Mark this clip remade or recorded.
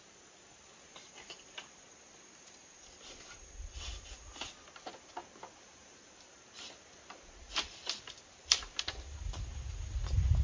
recorded